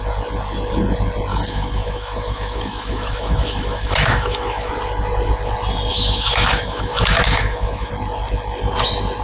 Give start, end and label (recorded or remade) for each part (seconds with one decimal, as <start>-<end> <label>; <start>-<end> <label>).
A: 0.0-1.3 recorded; 1.3-4.7 remade; 4.7-5.9 recorded; 5.9-7.9 remade; 7.9-9.2 recorded